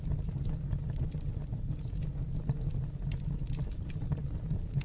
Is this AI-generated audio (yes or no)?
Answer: no